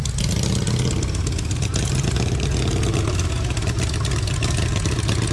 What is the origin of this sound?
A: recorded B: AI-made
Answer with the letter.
A